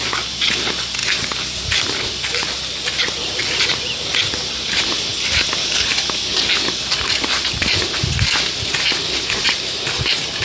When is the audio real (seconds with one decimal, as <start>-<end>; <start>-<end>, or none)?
0.0-3.2; 4.1-10.4